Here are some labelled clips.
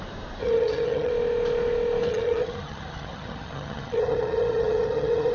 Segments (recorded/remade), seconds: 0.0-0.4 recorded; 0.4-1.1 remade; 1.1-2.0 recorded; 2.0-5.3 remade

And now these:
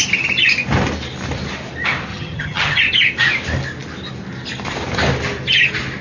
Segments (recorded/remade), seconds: 0.0-2.1 recorded; 2.1-2.8 remade; 2.8-6.0 recorded

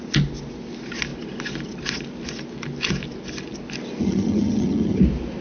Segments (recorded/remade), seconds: 0.0-4.0 recorded; 4.0-5.0 remade; 5.0-5.4 recorded